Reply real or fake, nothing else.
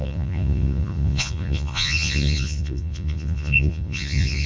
fake